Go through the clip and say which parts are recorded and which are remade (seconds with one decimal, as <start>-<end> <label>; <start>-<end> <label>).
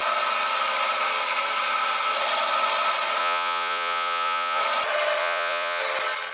0.0-3.2 recorded; 3.2-4.6 remade; 4.6-5.2 recorded; 5.2-5.8 remade; 5.8-6.3 recorded